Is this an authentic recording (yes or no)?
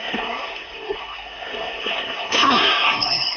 no